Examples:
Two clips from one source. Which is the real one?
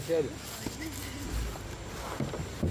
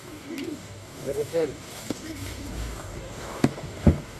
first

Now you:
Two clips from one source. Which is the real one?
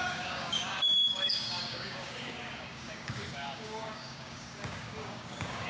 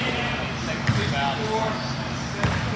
second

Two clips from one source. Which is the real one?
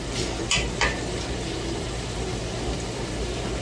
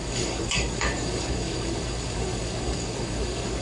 first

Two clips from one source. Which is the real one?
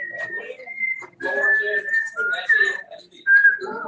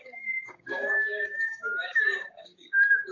first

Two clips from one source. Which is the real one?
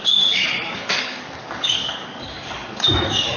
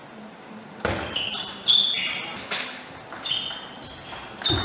second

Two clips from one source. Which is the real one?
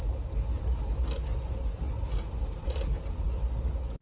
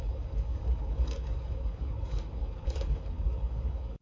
first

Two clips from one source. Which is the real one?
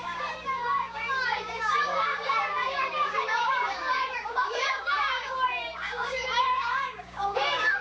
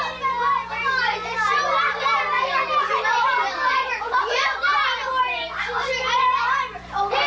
second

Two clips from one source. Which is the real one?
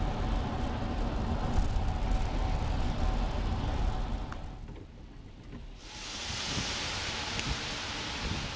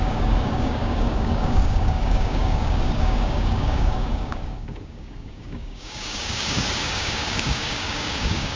first